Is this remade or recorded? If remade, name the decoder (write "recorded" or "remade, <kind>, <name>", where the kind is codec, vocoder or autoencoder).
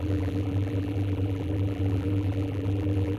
remade, vocoder, BigVGAN v2